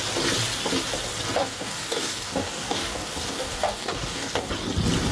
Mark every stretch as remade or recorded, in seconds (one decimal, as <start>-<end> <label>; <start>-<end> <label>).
0.0-1.4 recorded; 1.4-4.5 remade; 4.5-5.1 recorded